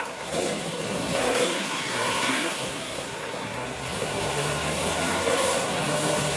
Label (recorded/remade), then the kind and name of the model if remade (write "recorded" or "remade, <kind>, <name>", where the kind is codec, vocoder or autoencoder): remade, codec, SNAC